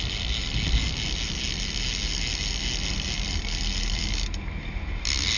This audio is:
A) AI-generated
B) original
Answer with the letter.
B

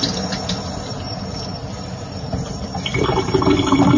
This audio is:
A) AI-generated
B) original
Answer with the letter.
B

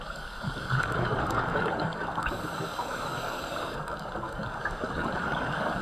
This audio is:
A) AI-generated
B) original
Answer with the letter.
A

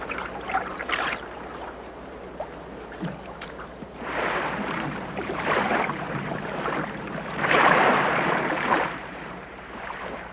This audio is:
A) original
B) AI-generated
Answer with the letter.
B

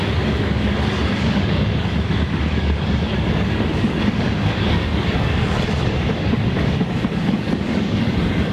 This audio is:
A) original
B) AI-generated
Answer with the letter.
B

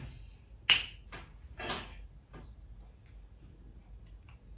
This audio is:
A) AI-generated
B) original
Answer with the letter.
B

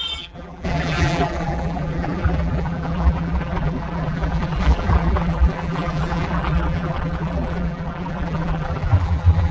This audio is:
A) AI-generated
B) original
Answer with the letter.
A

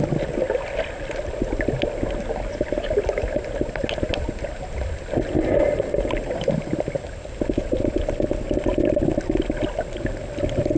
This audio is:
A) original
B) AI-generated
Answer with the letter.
A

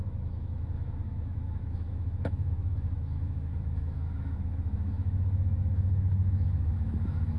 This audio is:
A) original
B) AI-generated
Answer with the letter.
B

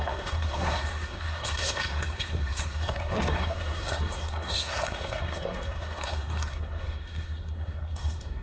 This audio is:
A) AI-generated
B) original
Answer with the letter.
A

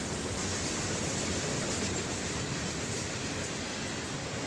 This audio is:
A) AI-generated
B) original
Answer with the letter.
B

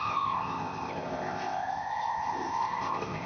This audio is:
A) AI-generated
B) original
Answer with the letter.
A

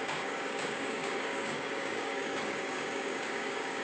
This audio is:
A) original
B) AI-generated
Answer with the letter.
B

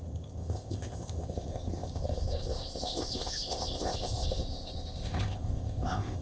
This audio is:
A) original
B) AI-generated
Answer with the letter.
B